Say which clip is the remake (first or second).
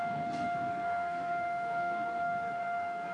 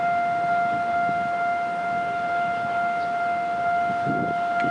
first